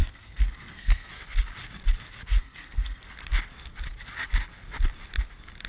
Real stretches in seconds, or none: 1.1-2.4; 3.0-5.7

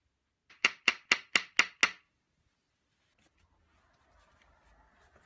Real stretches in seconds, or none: 0.0-5.3

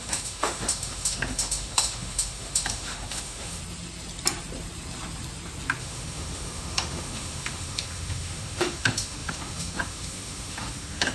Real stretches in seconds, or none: 3.6-5.8

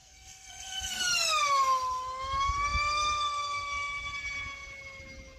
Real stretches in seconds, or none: 1.0-5.4

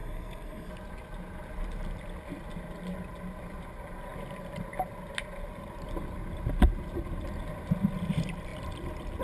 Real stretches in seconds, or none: 0.7-9.2

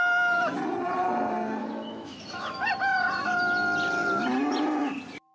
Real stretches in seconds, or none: 0.0-1.6; 2.6-5.3